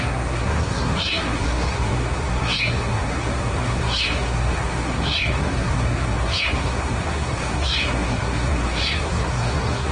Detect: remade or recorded remade